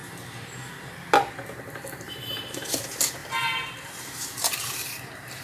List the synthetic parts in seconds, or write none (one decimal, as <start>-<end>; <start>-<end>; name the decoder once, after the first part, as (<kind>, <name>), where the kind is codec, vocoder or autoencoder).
1.3-5.4 (vocoder, BigVGAN v2)